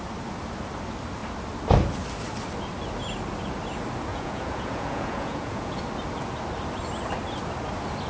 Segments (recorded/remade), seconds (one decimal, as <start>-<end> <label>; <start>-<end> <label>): 0.0-4.1 recorded; 4.1-5.8 remade; 5.8-8.1 recorded